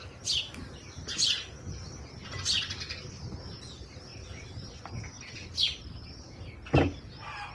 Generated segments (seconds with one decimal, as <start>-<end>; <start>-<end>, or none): 4.1-4.8